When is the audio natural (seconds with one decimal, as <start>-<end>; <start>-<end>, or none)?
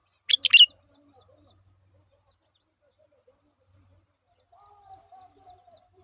0.0-6.0